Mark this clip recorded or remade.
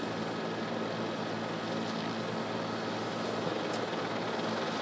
recorded